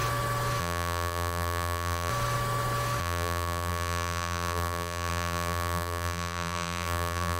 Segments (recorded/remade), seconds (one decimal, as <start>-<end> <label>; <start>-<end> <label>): 0.0-0.6 recorded; 0.6-2.1 remade; 2.1-3.0 recorded; 3.0-7.4 remade